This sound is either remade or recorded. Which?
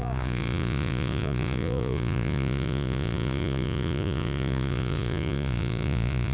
remade